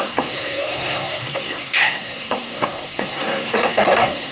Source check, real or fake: fake